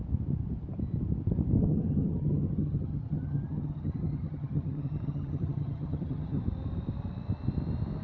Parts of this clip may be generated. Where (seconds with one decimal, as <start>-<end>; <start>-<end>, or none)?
1.6-6.4